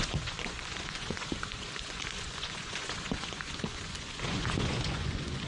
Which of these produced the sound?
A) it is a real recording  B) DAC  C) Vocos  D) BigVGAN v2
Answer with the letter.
C